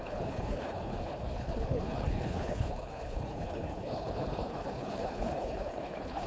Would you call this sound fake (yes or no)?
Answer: yes